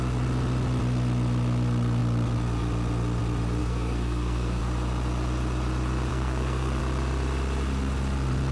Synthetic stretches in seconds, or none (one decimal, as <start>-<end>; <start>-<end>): 3.6-4.6; 6.1-6.8